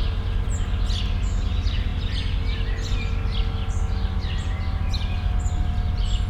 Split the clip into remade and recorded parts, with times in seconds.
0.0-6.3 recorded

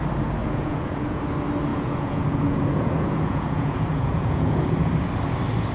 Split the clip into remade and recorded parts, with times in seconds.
0.0-0.4 recorded; 0.4-1.2 remade; 1.2-1.7 recorded; 1.7-4.9 remade; 4.9-5.7 recorded

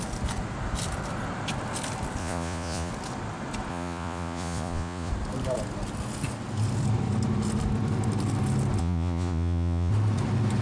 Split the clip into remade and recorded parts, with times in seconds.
0.0-2.2 recorded; 2.2-2.9 remade; 2.9-3.7 recorded; 3.7-5.1 remade; 5.1-8.8 recorded; 8.8-9.9 remade; 9.9-10.6 recorded

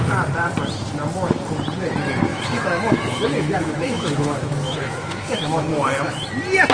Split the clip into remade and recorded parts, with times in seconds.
0.0-2.3 recorded; 2.3-6.3 remade; 6.3-6.7 recorded

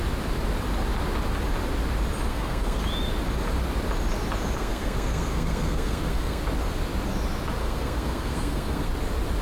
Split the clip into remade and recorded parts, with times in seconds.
0.0-2.3 recorded; 2.3-2.8 remade; 2.8-4.6 recorded; 4.6-6.4 remade; 6.4-7.6 recorded; 7.6-8.9 remade; 8.9-9.4 recorded